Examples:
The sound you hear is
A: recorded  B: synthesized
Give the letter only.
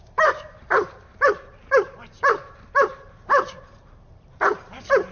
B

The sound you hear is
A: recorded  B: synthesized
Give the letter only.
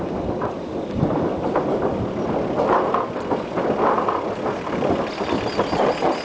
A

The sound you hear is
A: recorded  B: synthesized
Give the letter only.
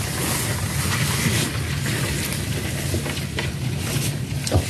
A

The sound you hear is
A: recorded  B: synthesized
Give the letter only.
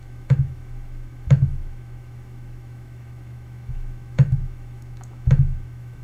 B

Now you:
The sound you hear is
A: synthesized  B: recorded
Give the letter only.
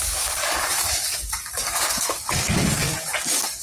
A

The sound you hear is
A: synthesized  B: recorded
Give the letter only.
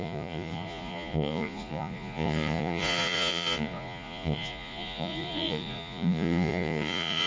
A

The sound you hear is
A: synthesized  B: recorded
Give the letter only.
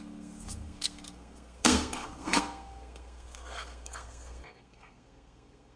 A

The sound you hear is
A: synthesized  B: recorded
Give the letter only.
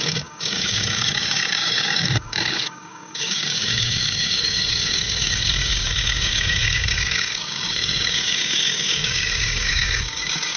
A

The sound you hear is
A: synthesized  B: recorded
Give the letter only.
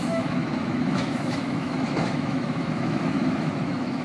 A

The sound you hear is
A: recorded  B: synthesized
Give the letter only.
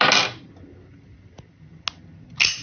A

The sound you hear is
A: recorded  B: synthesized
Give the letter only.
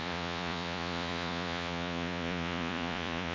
B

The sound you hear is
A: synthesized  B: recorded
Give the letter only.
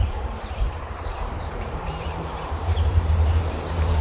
A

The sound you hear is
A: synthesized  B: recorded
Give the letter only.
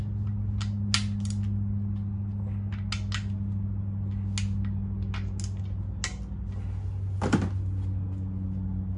B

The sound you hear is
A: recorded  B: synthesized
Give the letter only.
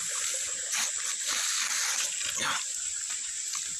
A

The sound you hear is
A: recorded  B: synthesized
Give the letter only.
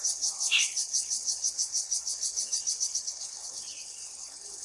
B